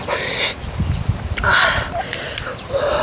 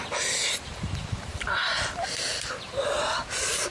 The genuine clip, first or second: first